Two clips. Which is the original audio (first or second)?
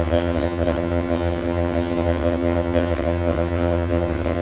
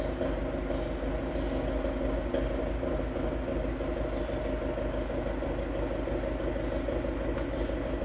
second